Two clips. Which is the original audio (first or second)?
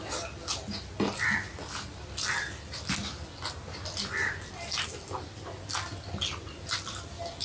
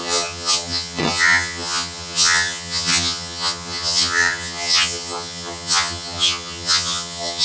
first